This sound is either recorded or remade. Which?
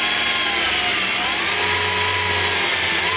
recorded